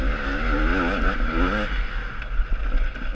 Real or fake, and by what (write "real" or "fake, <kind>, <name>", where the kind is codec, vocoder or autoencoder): real